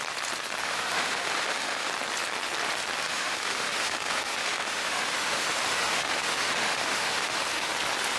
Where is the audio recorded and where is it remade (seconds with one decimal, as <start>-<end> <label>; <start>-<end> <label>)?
0.0-0.6 recorded; 0.6-1.9 remade; 1.9-3.0 recorded; 3.0-7.7 remade; 7.7-8.2 recorded